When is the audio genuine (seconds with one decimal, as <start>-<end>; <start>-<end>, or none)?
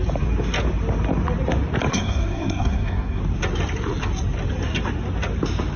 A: 0.0-1.9; 3.2-5.8